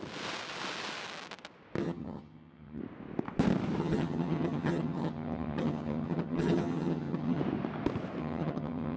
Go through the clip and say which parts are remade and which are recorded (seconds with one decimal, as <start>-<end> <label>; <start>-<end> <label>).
0.0-1.8 recorded; 1.8-2.8 remade; 2.8-3.8 recorded; 3.8-7.4 remade; 7.4-8.2 recorded; 8.2-9.0 remade